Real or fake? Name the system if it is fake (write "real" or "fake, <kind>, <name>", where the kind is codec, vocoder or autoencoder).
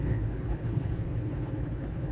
fake, codec, HILCodec